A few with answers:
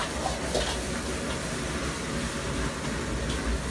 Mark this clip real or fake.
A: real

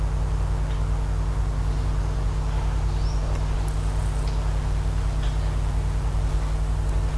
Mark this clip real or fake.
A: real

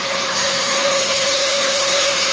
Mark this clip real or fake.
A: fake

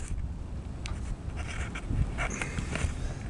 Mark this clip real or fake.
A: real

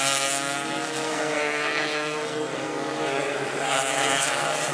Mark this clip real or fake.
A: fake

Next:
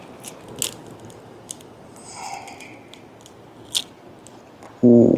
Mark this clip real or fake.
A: real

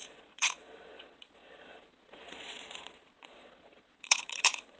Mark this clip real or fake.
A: fake